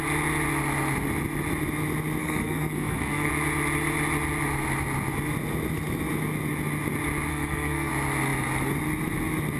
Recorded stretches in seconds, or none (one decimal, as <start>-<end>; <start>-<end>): 0.0-2.2; 3.3-7.3; 7.9-9.6